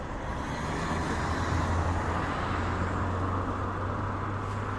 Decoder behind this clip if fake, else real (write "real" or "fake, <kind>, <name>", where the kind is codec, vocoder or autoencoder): real